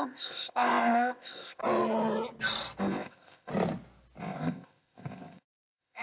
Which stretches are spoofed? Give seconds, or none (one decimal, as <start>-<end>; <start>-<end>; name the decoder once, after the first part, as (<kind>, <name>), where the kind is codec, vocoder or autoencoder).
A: 0.0-1.6 (codec, ZipCodec); 2.8-3.5; 4.2-6.0